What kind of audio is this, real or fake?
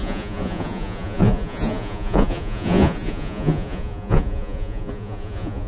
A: fake